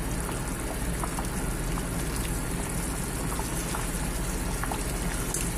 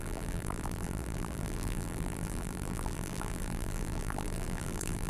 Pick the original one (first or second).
first